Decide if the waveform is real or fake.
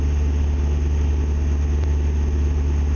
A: real